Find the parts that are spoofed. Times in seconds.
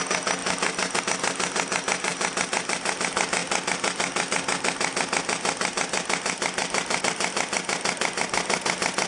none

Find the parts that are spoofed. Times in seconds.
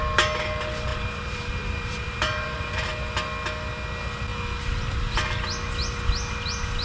0.9-2.9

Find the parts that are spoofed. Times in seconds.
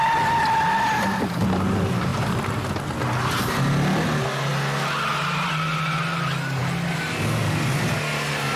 none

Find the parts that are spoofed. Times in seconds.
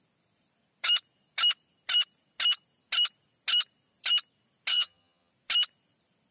4.7-5.3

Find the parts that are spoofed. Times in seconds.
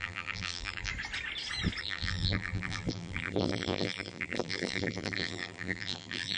0.0-0.9; 1.8-6.4